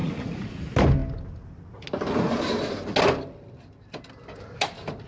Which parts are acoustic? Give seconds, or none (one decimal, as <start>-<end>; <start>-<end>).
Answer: 0.5-5.1